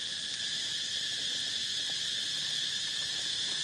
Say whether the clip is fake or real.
real